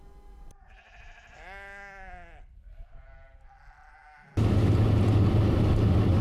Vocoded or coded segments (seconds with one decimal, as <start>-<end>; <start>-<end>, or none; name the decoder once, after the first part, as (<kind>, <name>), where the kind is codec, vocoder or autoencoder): none

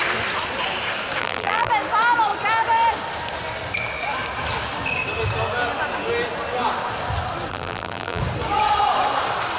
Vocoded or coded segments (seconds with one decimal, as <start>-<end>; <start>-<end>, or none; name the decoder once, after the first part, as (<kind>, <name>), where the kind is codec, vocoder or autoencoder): 1.2-1.7 (vocoder, BigVGAN v2); 7.5-8.2

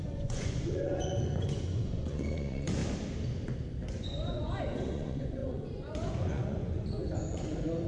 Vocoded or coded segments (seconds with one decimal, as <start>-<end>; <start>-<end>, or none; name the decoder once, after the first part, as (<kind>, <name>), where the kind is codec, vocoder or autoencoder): 0.0-2.8 (vocoder, Vocos); 3.9-7.9

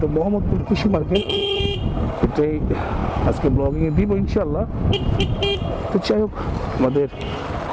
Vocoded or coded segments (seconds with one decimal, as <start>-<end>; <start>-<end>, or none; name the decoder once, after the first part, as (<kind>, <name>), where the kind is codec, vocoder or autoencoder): 0.6-1.6 (vocoder, HiFi-GAN)